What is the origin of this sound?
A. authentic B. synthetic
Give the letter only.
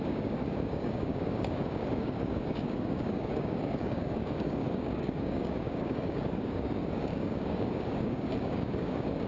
B